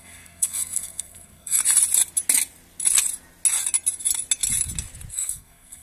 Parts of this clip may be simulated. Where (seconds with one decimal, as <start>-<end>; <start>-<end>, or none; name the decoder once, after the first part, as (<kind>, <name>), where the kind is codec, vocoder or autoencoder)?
0.0-1.6 (codec, SNAC); 5.1-5.8